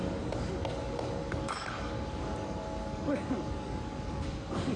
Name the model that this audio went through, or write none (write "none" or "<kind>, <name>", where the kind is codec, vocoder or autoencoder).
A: codec, DAC